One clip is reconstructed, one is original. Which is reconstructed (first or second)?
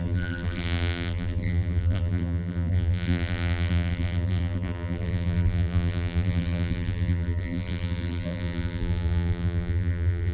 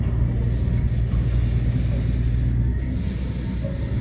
first